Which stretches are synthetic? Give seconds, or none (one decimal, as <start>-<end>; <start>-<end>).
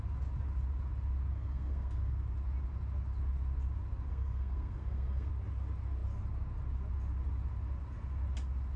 1.3-2.1; 4.1-5.3